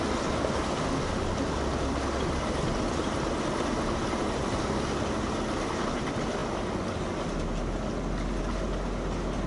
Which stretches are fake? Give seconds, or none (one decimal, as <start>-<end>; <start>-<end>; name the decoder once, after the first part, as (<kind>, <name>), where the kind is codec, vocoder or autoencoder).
none